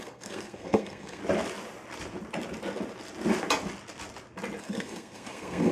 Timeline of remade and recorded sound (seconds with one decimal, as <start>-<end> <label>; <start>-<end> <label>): 0.0-1.2 remade; 1.2-4.6 recorded; 4.6-5.7 remade